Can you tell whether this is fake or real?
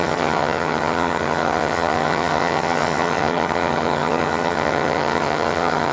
fake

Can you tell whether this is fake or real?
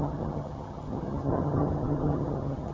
fake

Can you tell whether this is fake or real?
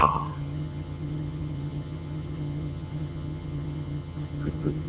fake